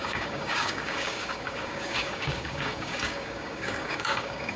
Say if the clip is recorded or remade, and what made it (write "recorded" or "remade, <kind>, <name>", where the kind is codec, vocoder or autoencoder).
remade, codec, DAC